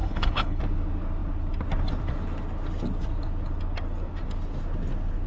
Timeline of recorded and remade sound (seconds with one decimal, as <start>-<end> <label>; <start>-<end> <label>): 0.0-0.6 remade; 0.6-5.3 recorded